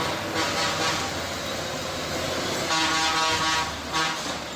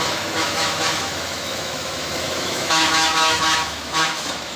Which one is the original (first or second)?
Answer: first